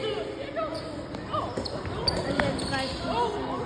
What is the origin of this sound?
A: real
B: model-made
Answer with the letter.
A